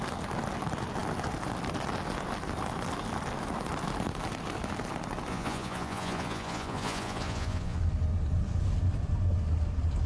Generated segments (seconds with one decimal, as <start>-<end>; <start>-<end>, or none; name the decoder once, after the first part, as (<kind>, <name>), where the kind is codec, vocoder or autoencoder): 5.3-7.8 (vocoder, Vocos)